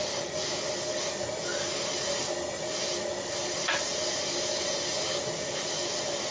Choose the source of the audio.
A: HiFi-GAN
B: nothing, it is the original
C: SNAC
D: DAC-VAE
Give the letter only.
B